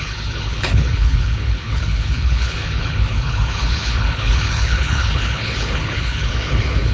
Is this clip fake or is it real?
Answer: fake